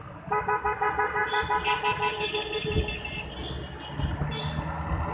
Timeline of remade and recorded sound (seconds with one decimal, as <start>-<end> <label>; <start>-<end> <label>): 0.0-5.1 recorded